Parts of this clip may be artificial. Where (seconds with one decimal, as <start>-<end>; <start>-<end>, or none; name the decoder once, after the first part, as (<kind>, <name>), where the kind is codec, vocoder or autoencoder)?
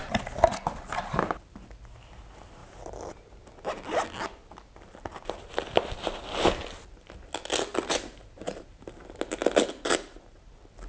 2.6-3.3 (vocoder, BigVGAN v2); 7.7-9.0